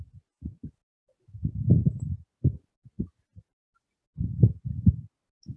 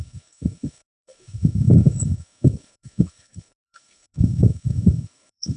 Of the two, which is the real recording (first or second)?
first